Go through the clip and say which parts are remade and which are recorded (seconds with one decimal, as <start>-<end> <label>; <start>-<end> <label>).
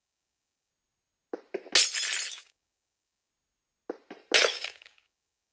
0.0-0.7 remade; 0.7-2.3 recorded; 2.3-3.3 remade; 3.3-4.5 recorded; 4.5-5.5 remade